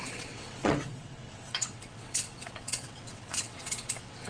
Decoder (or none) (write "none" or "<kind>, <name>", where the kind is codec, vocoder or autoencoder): vocoder, WaveNeXt